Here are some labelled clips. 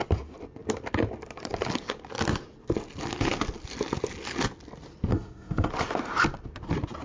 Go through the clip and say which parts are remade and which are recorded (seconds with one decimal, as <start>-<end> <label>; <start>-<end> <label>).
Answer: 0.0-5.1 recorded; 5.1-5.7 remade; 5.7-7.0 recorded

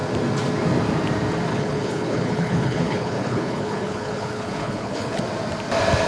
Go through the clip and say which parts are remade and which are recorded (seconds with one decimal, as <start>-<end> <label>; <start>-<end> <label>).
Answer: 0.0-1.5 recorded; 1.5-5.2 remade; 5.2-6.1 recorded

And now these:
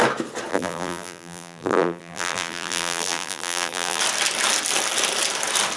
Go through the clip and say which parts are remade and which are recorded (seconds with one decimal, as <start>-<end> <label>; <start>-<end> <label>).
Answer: 0.0-0.5 recorded; 0.5-4.0 remade; 4.0-5.8 recorded

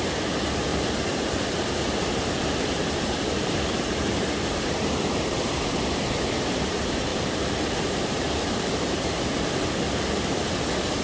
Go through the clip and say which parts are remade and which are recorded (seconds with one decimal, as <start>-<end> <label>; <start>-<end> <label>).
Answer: 0.0-0.7 recorded; 0.7-5.5 remade; 5.5-7.1 recorded; 7.1-9.2 remade; 9.2-11.0 recorded

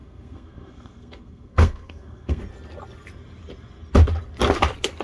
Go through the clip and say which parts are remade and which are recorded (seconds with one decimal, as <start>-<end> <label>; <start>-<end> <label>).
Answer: 0.0-2.4 remade; 2.4-5.0 recorded

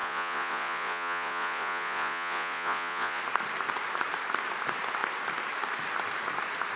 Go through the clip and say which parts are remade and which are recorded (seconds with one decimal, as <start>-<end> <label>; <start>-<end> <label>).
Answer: 0.0-3.2 remade; 3.2-6.8 recorded

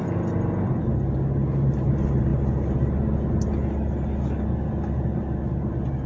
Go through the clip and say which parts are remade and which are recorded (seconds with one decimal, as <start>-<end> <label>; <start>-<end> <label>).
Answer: 0.0-6.1 recorded

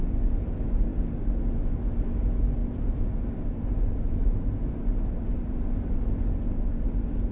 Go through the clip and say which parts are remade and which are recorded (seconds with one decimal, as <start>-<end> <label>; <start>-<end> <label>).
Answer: 0.0-2.6 recorded; 2.6-6.0 remade; 6.0-7.3 recorded